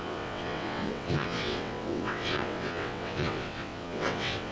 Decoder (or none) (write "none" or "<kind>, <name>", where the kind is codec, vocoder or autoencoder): vocoder, WaveNeXt